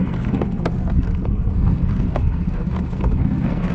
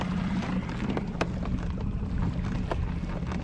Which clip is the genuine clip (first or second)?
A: second